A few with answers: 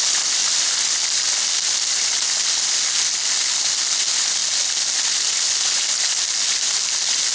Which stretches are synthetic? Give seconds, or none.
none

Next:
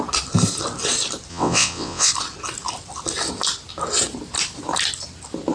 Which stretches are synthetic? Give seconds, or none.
1.3-2.1